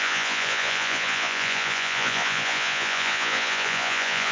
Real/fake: fake